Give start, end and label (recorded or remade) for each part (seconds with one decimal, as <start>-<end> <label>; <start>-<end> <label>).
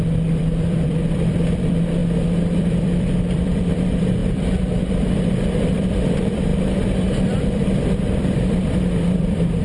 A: 0.0-2.0 remade; 2.0-2.6 recorded; 2.6-9.6 remade